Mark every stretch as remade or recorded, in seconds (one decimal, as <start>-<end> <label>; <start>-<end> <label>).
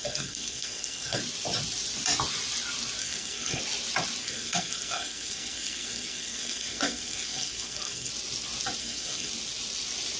0.0-1.2 remade; 1.2-3.0 recorded; 3.0-3.6 remade; 3.6-4.2 recorded; 4.2-8.1 remade; 8.1-8.8 recorded; 8.8-9.3 remade; 9.3-10.2 recorded